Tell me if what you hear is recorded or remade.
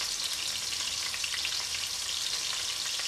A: recorded